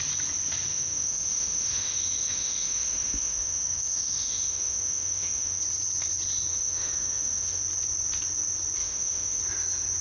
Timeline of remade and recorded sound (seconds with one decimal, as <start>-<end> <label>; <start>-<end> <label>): 0.0-0.7 recorded; 0.7-5.6 remade; 5.6-6.5 recorded; 6.5-7.6 remade; 7.6-8.8 recorded; 8.8-9.4 remade; 9.4-10.0 recorded